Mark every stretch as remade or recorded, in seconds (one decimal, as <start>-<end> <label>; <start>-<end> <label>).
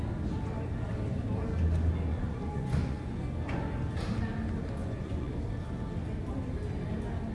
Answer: 0.0-2.1 recorded; 2.1-3.2 remade; 3.2-4.8 recorded; 4.8-5.4 remade; 5.4-7.3 recorded